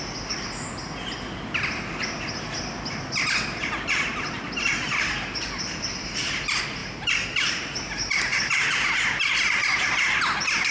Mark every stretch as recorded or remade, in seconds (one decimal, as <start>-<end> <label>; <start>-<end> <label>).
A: 0.0-10.7 recorded